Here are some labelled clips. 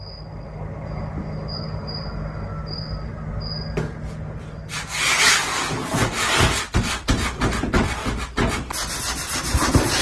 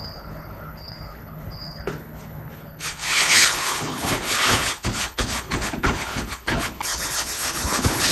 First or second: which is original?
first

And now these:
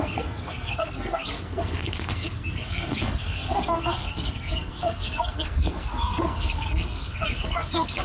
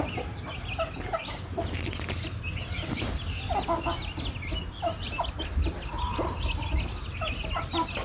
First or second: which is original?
second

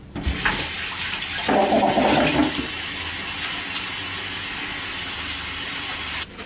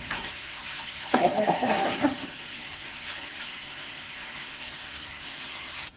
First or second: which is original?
first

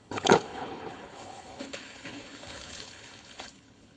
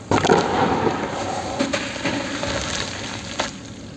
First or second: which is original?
second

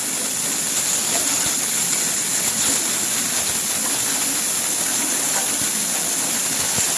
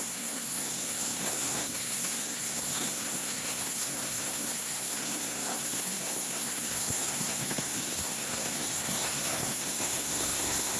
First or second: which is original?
first